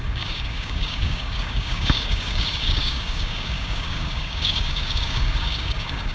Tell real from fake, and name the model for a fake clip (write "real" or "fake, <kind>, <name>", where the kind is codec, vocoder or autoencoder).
fake, codec, DAC